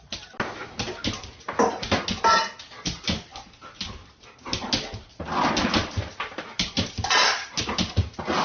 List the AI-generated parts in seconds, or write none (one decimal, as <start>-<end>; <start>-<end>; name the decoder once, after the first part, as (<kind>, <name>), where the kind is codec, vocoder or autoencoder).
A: none